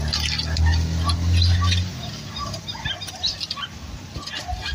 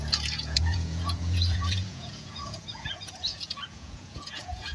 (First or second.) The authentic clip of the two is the first